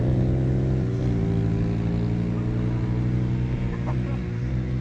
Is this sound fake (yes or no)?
no